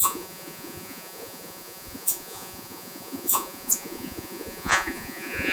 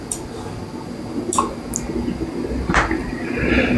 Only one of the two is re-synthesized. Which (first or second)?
first